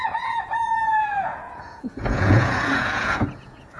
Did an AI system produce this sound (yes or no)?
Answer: yes